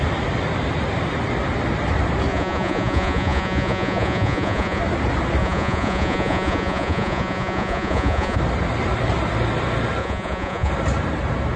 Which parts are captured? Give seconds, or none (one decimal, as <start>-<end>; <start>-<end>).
0.0-2.3; 4.8-5.4; 8.4-10.0; 10.7-11.6

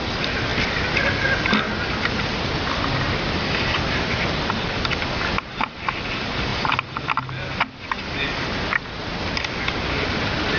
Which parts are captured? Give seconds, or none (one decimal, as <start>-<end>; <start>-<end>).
0.0-10.6

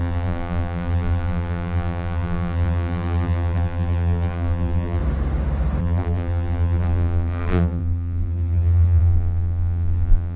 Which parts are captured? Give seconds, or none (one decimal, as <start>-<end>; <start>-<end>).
5.0-5.8

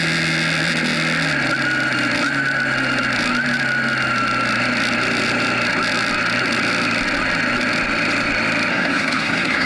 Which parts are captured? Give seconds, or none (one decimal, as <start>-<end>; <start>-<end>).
0.0-8.7

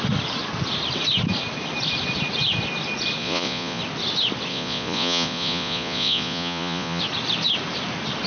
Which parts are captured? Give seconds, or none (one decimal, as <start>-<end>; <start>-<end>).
0.0-3.2; 3.8-4.5; 7.0-8.3

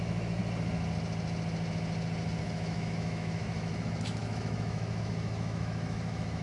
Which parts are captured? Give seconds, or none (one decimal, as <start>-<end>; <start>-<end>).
0.4-2.4